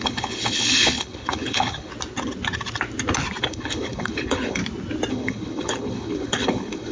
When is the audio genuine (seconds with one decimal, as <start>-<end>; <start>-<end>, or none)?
1.9-3.4; 4.6-5.1